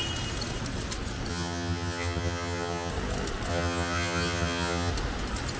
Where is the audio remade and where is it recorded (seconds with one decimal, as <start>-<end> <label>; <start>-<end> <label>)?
0.0-1.3 recorded; 1.3-2.9 remade; 2.9-3.5 recorded; 3.5-4.9 remade; 4.9-5.6 recorded